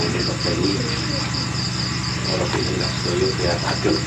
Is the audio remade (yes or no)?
no